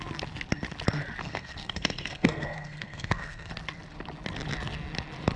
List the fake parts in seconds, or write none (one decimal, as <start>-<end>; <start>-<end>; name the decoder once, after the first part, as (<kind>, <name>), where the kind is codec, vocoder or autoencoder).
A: 1.2-3.5 (codec, SNAC)